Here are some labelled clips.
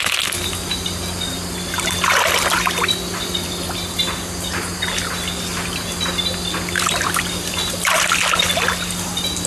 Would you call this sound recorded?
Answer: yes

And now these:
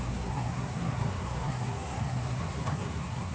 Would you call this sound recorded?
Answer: no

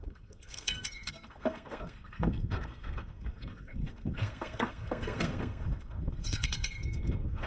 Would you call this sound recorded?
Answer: no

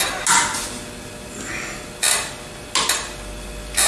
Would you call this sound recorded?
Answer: yes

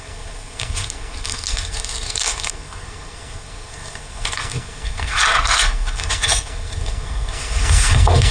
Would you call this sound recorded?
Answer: no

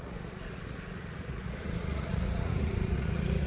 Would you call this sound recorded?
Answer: no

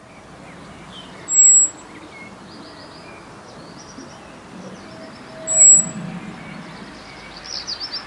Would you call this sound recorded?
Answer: yes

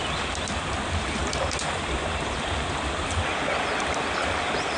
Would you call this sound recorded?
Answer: yes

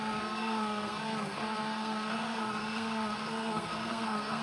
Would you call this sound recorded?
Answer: no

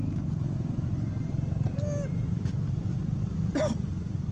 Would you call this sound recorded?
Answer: yes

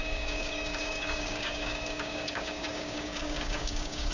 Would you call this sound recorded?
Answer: no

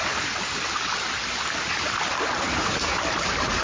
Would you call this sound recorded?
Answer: yes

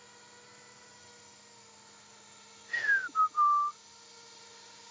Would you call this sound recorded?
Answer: yes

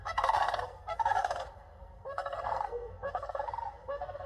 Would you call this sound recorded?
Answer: no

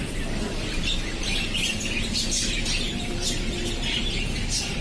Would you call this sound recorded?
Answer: no